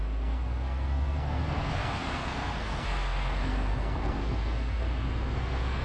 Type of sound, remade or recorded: remade